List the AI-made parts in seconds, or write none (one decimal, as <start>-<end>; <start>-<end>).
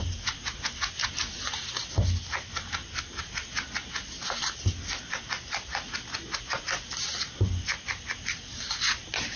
none